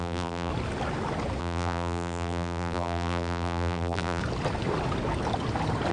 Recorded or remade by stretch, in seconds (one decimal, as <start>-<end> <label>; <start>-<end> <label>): 0.0-0.5 remade; 0.5-1.4 recorded; 1.4-4.2 remade; 4.2-5.9 recorded